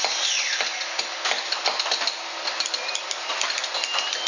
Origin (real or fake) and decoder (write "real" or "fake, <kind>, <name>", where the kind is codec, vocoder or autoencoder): real